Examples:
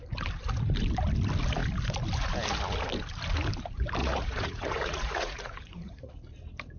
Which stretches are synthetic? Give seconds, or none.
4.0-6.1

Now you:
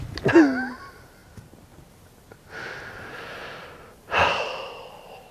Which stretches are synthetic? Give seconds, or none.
none

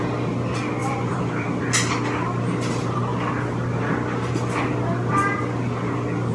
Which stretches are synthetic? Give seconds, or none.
0.8-1.6